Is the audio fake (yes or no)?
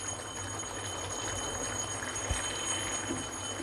no